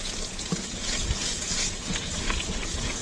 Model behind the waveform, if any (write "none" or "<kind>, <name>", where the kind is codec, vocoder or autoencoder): vocoder, Vocos